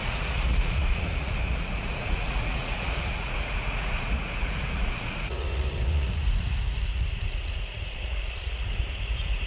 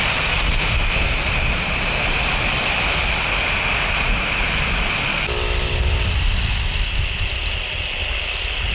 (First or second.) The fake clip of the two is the first